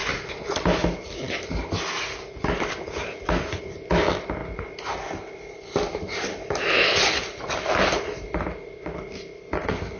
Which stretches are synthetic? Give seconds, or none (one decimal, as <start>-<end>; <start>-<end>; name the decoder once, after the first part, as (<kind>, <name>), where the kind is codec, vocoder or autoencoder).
none

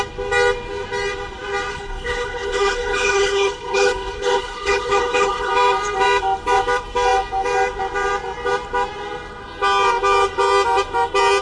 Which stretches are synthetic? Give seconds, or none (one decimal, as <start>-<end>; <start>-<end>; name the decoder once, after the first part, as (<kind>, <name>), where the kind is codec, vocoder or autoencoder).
1.7-5.5 (codec, HILCodec)

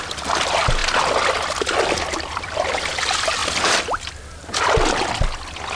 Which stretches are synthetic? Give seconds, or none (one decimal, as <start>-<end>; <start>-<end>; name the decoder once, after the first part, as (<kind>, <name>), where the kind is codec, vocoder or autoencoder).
none

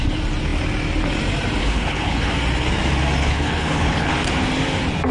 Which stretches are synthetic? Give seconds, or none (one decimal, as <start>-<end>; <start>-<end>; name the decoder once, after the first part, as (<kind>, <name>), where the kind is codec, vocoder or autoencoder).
1.6-2.3 (codec, HILCodec); 3.2-4.1

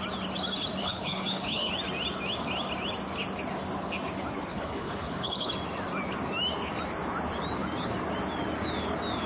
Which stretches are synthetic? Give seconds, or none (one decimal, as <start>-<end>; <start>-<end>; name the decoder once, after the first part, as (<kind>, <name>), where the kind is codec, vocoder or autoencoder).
0.8-1.7 (codec, HILCodec); 4.5-5.5

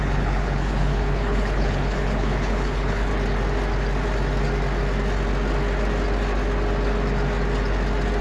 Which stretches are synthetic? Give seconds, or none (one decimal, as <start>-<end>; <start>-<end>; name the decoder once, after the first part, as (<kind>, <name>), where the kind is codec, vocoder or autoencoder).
0.0-3.1 (codec, HILCodec)

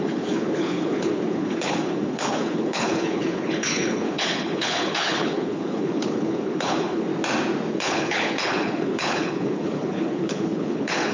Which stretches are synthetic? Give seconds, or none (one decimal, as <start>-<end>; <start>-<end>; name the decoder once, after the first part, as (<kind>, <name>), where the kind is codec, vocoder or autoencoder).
0.0-7.1 (codec, HILCodec); 7.7-11.1